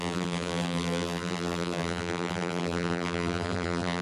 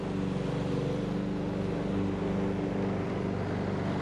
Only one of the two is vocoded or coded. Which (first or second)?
first